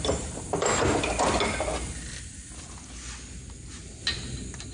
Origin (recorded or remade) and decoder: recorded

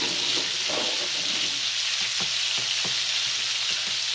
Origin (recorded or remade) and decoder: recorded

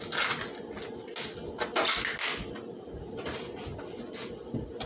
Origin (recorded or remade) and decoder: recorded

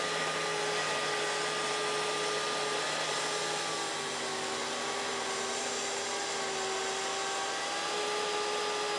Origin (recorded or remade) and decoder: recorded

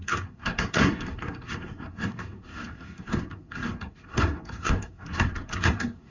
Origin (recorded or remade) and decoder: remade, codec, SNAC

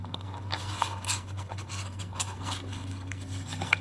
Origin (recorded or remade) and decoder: remade, codec, SNAC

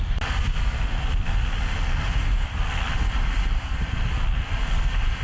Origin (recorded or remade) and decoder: recorded